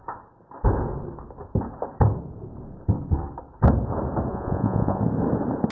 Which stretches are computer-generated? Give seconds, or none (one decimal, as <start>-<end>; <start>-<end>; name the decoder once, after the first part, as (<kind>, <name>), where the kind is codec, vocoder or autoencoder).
4.3-5.0 (vocoder, Vocos)